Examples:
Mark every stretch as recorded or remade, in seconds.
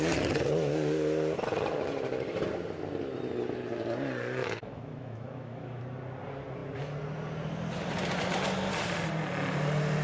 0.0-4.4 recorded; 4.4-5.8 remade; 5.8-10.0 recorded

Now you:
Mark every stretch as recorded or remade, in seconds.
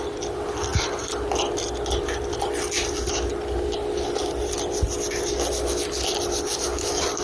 0.0-7.2 recorded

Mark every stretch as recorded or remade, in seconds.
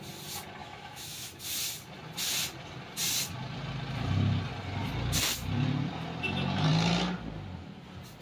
0.0-0.6 recorded; 0.6-1.4 remade; 1.4-8.2 recorded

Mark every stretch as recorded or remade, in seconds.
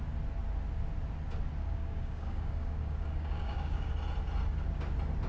0.0-1.6 recorded; 1.6-3.9 remade; 3.9-5.3 recorded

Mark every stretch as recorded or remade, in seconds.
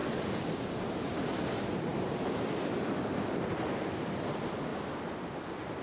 0.0-0.6 remade; 0.6-5.8 recorded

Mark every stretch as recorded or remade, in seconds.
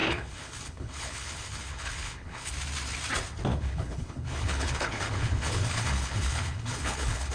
0.0-2.5 remade; 2.5-3.5 recorded; 3.5-7.3 remade